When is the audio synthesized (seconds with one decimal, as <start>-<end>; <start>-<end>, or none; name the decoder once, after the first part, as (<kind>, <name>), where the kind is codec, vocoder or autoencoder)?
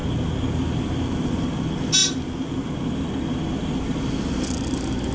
none